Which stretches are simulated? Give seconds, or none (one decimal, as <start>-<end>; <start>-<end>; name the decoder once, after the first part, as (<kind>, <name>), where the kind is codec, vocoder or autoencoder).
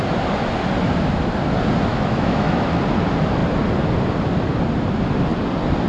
1.9-2.8 (autoencoder, DAC-VAE)